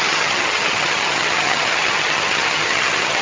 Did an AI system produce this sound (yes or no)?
yes